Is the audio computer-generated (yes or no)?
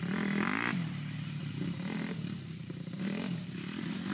no